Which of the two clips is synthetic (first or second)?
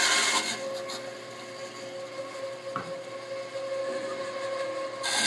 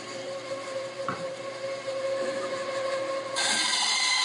second